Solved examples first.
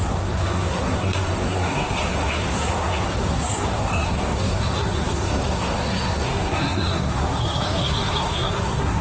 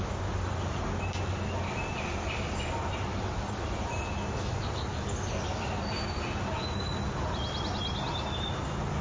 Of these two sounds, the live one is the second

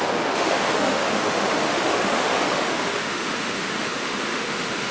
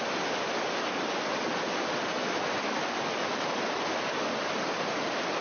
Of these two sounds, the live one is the second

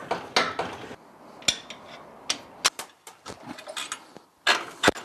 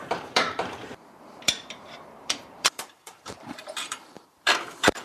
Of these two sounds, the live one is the first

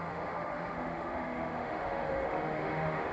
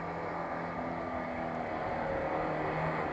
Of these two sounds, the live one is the second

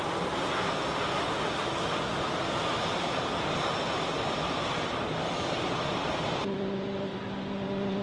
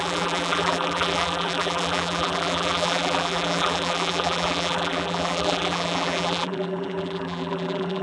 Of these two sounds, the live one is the first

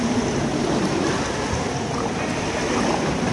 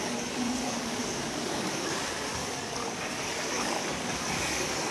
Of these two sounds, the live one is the first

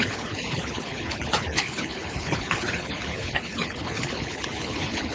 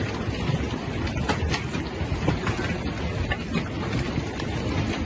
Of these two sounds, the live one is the second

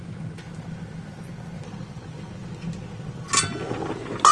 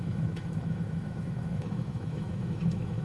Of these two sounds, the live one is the first